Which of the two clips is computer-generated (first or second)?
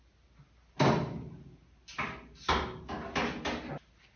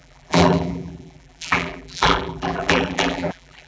second